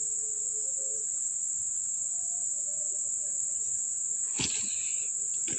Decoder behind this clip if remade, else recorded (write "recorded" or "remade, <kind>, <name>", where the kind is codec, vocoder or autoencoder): recorded